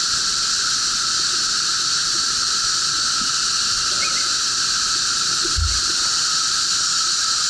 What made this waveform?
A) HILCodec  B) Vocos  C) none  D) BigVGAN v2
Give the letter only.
C